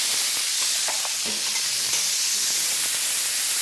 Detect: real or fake real